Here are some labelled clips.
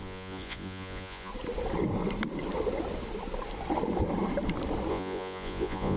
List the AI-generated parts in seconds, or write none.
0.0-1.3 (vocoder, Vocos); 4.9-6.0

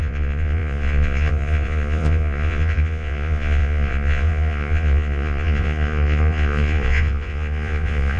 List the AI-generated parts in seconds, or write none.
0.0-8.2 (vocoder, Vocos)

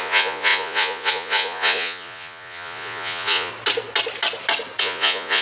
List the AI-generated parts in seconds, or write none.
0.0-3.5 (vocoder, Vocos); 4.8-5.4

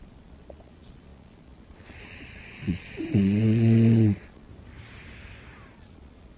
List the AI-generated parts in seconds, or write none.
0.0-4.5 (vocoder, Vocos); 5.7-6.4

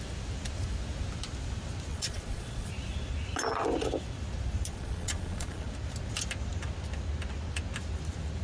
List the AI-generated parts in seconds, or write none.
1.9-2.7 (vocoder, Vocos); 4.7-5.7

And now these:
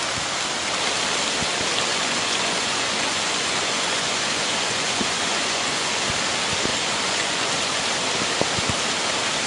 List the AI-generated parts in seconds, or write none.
1.9-6.0 (vocoder, Vocos); 6.7-7.8

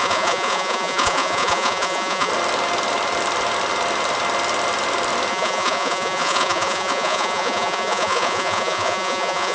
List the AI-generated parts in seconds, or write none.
0.0-2.3 (vocoder, Vocos); 5.3-9.5